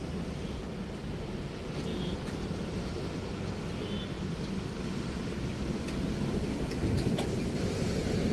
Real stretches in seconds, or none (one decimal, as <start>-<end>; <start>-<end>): 0.0-1.9; 2.9-8.3